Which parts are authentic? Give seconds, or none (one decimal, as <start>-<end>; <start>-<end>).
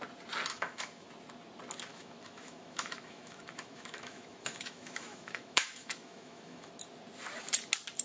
0.0-0.5; 1.1-1.9; 6.7-8.0